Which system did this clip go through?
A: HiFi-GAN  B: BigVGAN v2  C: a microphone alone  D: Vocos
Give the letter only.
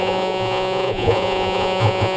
D